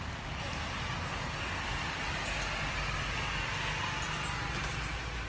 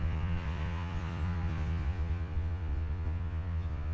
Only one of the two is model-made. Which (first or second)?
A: second